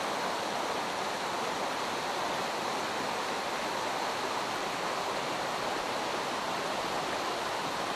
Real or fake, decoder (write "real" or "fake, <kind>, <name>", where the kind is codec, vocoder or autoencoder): real